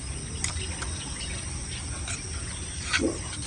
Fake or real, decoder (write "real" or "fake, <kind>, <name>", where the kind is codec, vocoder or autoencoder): real